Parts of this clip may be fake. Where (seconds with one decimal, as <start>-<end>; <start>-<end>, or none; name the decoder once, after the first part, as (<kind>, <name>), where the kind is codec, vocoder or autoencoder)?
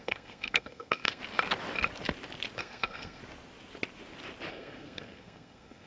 0.0-1.2 (codec, SNAC); 2.6-3.2; 4.5-5.9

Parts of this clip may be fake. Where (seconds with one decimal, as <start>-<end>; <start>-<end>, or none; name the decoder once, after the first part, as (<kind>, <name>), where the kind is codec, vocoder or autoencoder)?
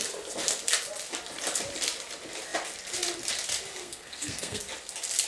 3.8-4.6 (codec, SNAC)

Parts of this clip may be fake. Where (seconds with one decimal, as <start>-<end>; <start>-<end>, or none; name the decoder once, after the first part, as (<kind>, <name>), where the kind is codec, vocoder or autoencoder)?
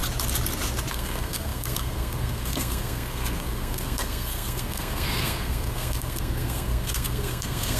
0.9-7.8 (codec, SNAC)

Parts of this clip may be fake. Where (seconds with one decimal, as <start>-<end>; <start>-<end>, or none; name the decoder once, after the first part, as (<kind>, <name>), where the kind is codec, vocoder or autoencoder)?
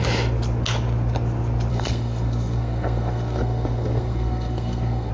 1.7-5.1 (codec, SNAC)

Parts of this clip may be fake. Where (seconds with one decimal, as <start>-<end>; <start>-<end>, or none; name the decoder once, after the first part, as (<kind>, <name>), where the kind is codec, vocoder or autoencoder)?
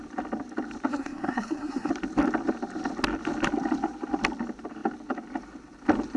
0.9-1.9 (codec, SNAC)